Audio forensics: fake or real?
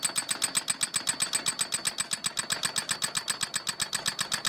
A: real